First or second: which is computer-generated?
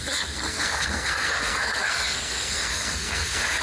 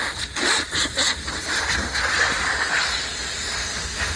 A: first